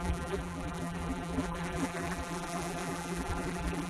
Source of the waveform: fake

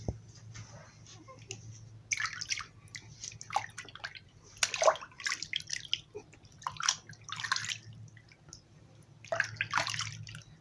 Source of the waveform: real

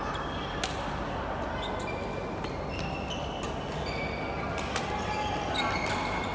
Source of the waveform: real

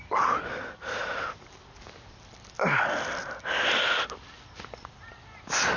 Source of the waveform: real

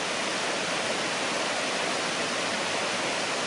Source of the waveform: real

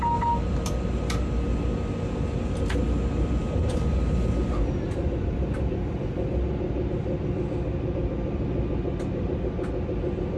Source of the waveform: real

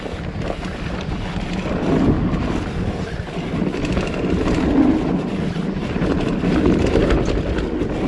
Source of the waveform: real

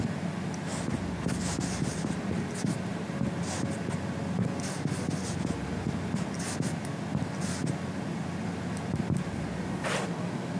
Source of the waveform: real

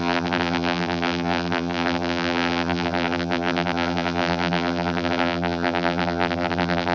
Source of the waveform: fake